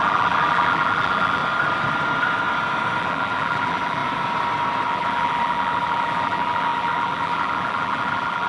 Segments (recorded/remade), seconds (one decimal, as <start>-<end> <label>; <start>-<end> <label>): 0.0-1.4 remade; 1.4-3.0 recorded; 3.0-4.0 remade; 4.0-4.9 recorded; 4.9-8.5 remade